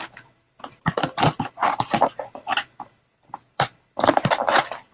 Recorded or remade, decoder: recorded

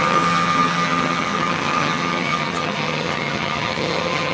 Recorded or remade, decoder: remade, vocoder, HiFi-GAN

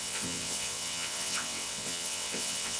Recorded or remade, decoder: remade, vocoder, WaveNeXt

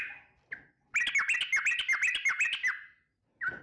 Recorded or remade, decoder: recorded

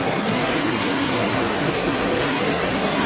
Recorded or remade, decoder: remade, codec, SNAC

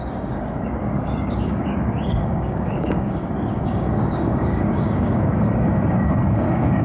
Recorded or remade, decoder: remade, codec, DAC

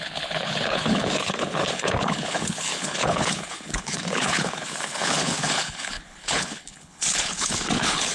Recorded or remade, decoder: remade, codec, HILCodec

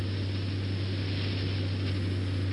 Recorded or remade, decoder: recorded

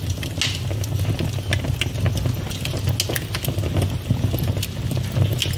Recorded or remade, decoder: recorded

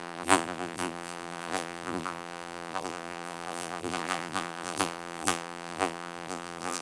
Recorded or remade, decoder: remade, vocoder, BigVGAN v2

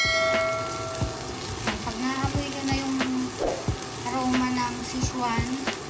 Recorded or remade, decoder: recorded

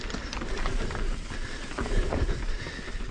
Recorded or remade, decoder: recorded